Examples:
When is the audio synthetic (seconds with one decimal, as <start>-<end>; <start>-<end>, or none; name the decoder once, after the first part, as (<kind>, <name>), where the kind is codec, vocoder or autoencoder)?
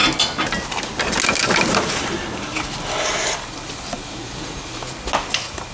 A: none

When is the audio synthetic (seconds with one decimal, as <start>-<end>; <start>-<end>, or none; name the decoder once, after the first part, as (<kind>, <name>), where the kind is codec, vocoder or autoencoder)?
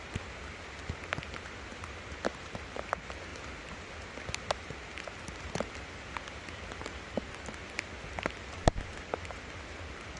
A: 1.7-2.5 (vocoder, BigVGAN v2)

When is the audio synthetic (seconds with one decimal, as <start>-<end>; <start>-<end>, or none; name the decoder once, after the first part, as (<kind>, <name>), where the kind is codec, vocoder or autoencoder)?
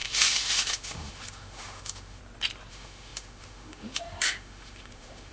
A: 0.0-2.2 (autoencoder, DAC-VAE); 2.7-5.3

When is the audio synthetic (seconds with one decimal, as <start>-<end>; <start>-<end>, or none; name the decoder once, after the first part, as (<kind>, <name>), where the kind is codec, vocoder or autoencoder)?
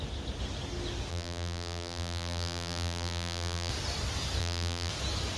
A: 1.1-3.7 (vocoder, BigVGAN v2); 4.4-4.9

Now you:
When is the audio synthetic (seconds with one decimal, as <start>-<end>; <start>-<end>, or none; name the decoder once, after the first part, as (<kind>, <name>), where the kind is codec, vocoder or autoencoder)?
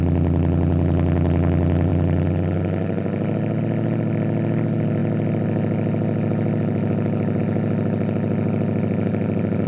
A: none